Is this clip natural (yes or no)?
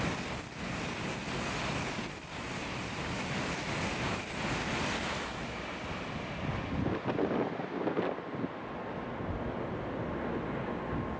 yes